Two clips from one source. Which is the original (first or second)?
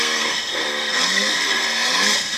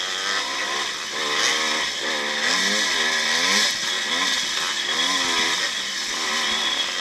second